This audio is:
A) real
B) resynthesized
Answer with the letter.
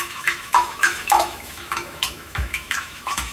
B